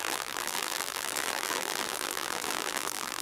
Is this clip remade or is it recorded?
remade